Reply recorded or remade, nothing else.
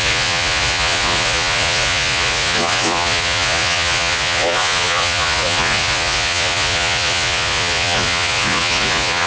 remade